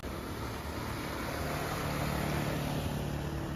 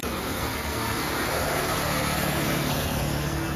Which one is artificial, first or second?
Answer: second